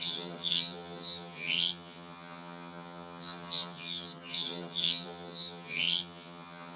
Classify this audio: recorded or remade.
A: remade